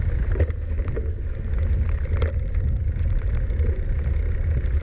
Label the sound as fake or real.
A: real